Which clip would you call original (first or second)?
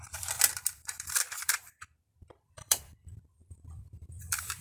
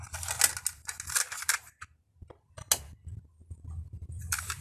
second